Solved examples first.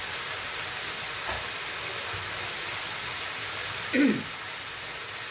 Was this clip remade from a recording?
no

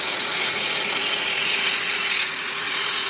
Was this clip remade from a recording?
yes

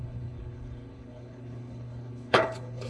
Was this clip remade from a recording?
yes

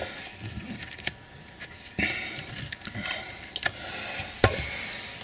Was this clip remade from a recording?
no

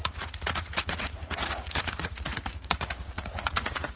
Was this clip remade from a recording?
yes